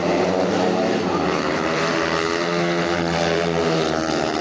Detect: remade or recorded remade